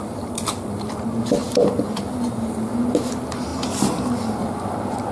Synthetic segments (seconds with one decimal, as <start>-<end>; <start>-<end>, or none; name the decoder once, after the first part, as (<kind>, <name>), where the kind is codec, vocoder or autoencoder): 1.4-2.0 (vocoder, BigVGAN v2)